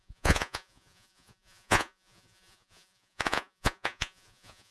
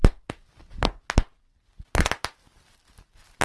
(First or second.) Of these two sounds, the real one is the second